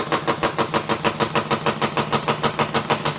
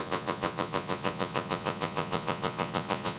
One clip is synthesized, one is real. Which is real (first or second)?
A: first